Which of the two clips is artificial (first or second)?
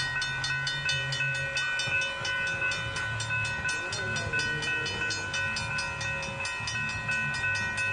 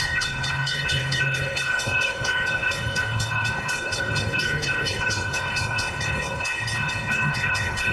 second